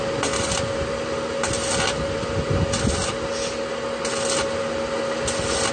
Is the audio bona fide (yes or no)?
yes